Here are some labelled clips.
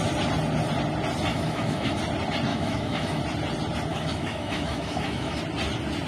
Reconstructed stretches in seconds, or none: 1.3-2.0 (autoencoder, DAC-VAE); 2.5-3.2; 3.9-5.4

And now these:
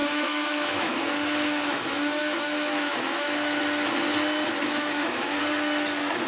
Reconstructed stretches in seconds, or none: 0.0-3.6 (autoencoder, DAC-VAE); 4.6-5.4

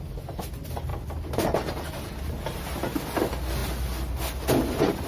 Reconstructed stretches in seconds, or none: none